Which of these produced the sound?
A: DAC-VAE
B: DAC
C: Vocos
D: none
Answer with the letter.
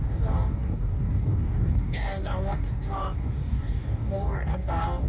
B